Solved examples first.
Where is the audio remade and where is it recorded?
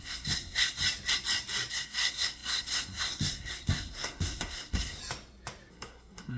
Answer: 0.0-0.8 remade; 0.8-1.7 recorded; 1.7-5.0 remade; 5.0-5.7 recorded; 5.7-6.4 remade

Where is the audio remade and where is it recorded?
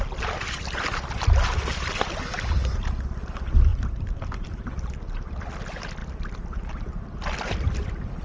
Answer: 0.0-3.7 recorded; 3.7-5.4 remade; 5.4-6.0 recorded; 6.0-6.9 remade; 6.9-8.2 recorded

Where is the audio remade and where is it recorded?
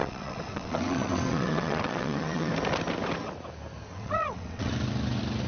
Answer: 0.0-2.5 remade; 2.5-3.9 recorded; 3.9-4.7 remade; 4.7-5.5 recorded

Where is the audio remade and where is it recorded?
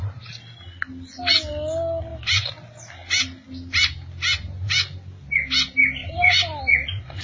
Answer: 0.0-6.0 recorded; 6.0-6.6 remade; 6.6-7.2 recorded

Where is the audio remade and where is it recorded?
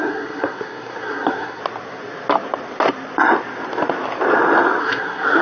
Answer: 0.0-1.6 remade; 1.6-4.8 recorded; 4.8-5.4 remade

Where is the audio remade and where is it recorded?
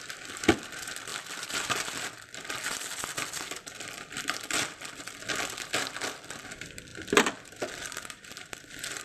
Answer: 0.0-9.0 remade